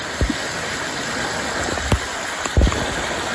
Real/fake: real